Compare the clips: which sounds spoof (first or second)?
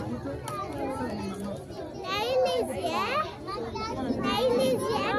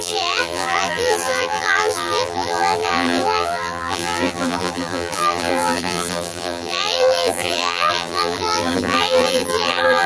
second